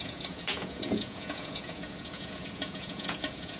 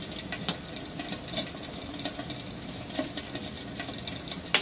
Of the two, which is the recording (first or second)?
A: second